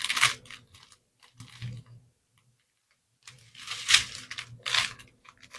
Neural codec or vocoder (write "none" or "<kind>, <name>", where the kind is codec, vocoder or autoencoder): none